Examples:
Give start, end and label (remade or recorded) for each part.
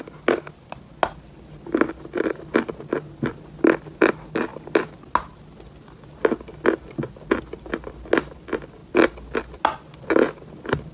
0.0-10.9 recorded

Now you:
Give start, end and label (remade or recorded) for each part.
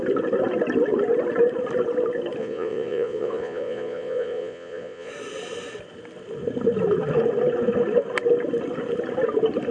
0.0-2.4 recorded; 2.4-5.1 remade; 5.1-9.7 recorded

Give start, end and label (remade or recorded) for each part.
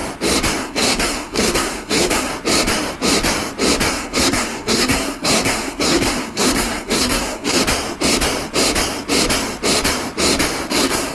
0.0-0.6 recorded; 0.6-2.3 remade; 2.3-3.9 recorded; 3.9-7.6 remade; 7.6-10.7 recorded; 10.7-11.1 remade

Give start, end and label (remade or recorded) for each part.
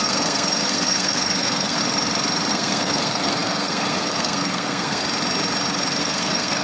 0.0-1.8 remade; 1.8-2.5 recorded; 2.5-5.0 remade; 5.0-6.0 recorded; 6.0-6.6 remade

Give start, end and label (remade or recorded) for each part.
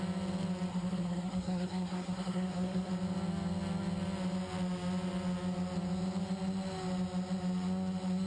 0.0-0.7 recorded; 0.7-2.9 remade; 2.9-8.3 recorded